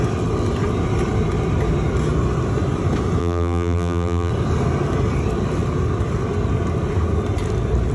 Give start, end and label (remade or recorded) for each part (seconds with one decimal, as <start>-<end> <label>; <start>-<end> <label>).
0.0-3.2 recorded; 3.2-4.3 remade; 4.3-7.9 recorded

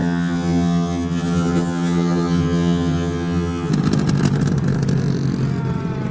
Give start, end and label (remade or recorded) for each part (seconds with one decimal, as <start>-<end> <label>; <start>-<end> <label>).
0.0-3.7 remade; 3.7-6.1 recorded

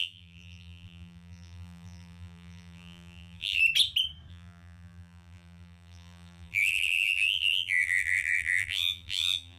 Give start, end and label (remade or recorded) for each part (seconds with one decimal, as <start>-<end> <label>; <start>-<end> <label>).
0.0-3.6 remade; 3.6-4.3 recorded; 4.3-9.6 remade

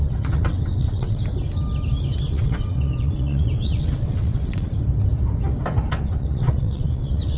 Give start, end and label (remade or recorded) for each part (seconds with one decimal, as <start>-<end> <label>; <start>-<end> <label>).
0.0-1.2 remade; 1.2-2.2 recorded; 2.2-4.7 remade; 4.7-5.9 recorded; 5.9-7.4 remade

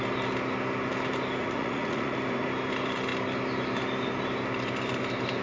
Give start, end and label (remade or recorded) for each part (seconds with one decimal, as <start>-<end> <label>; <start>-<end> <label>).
0.0-1.4 recorded; 1.4-2.2 remade; 2.2-5.4 recorded